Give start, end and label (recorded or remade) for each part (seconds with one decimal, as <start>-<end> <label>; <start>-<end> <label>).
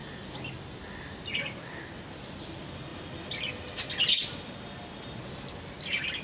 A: 0.0-6.2 recorded